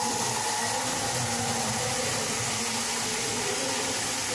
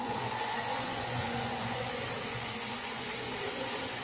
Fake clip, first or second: second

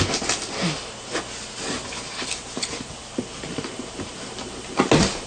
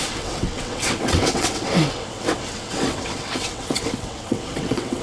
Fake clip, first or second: second